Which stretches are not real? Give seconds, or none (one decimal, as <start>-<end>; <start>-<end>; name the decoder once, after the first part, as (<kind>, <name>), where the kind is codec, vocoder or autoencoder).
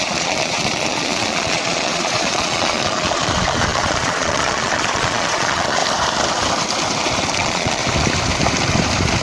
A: 0.0-5.8 (vocoder, Vocos); 7.3-7.8